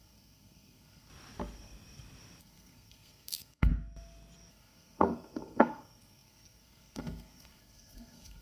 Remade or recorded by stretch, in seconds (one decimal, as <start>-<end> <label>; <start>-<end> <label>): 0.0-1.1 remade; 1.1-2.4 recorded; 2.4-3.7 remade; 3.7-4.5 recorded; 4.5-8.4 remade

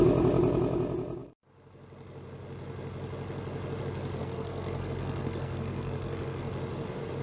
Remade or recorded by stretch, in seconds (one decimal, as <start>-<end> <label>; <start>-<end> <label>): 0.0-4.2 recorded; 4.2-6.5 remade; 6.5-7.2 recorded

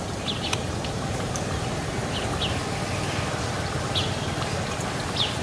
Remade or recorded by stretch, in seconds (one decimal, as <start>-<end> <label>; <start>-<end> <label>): 0.0-5.4 recorded

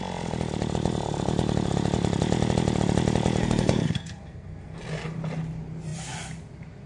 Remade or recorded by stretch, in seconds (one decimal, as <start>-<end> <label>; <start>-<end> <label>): 0.0-3.4 recorded; 3.4-4.8 remade; 4.8-6.9 recorded

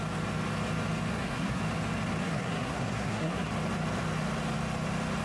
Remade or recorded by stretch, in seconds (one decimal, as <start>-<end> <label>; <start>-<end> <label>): 0.0-1.1 recorded; 1.1-1.6 remade; 1.6-2.2 recorded; 2.2-3.5 remade; 3.5-5.2 recorded

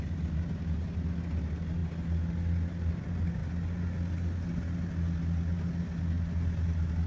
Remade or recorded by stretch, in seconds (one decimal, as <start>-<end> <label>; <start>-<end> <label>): 0.0-7.1 recorded

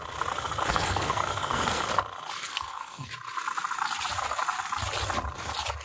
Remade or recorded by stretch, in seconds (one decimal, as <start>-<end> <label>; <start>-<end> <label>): 0.0-0.7 recorded; 0.7-1.8 remade; 1.8-2.4 recorded; 2.4-3.1 remade; 3.1-5.8 recorded